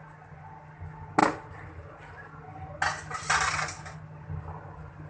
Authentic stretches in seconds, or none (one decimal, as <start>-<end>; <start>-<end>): 0.0-5.1